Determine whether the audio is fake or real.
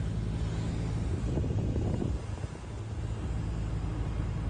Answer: real